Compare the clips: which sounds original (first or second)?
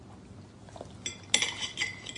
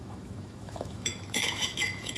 first